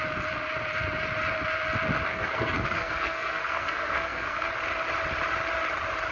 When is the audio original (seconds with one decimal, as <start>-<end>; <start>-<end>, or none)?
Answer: 0.0-2.1; 4.5-6.1